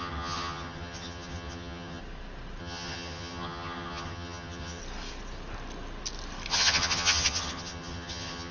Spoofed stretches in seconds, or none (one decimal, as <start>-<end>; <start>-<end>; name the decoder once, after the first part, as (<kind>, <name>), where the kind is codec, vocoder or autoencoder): 0.0-2.0 (vocoder, HiFi-GAN); 2.6-4.8; 6.5-8.5